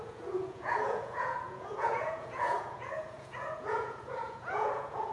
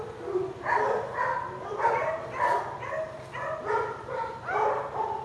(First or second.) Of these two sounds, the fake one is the first